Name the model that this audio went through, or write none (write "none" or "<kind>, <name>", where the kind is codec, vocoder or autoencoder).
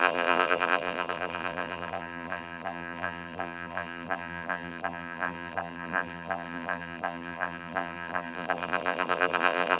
vocoder, BigVGAN v2